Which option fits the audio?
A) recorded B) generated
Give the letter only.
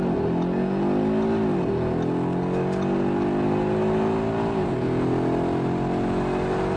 A